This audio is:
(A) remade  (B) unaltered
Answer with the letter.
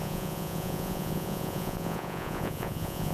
A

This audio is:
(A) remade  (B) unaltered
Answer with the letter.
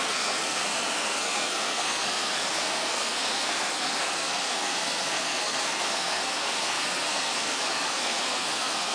A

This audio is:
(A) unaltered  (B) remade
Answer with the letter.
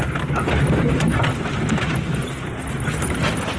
A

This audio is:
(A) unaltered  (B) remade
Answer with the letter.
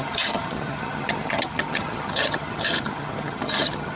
B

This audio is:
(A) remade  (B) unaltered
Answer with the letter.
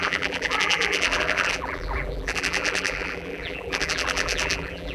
A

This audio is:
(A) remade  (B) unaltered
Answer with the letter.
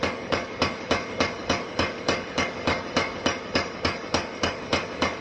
A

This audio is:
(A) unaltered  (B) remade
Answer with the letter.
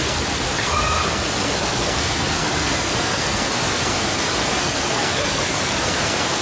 B